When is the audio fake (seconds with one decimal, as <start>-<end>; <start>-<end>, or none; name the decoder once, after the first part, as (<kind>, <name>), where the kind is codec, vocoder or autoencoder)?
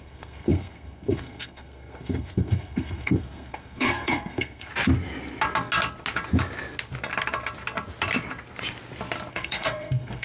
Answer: 0.0-4.7 (codec, SNAC); 9.3-10.2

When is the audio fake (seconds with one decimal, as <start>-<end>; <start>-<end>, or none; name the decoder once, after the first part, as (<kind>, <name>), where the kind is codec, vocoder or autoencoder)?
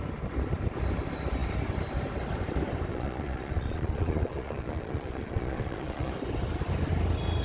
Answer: 2.9-6.1 (vocoder, Vocos)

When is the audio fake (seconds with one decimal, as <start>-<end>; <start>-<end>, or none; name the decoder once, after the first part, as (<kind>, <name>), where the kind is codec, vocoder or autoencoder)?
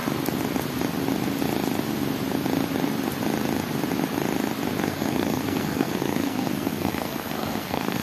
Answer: 4.8-8.0 (codec, SNAC)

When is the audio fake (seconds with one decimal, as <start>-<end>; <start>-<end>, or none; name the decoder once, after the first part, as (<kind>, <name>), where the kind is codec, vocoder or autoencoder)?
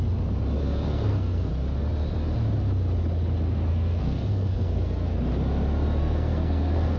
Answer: 0.6-1.5 (codec, SNAC); 3.7-5.2; 6.0-7.0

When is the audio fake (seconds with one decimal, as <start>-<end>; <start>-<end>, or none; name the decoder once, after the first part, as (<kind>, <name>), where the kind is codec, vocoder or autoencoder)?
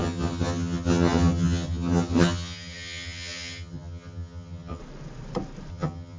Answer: 0.0-4.8 (vocoder, HiFi-GAN); 5.7-6.2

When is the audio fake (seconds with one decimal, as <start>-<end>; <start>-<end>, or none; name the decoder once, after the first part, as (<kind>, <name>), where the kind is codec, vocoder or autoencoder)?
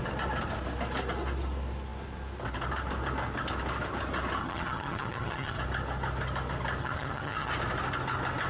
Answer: 4.4-5.6 (vocoder, HiFi-GAN); 6.8-7.5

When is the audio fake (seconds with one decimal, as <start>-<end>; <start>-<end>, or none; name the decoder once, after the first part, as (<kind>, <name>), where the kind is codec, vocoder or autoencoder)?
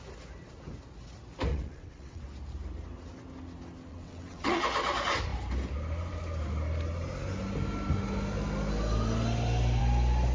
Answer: 1.5-2.2 (vocoder, WaveNeXt); 3.9-4.6